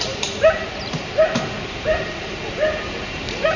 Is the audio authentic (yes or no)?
no